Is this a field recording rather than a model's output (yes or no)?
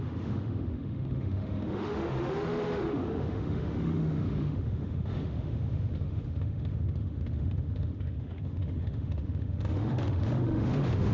no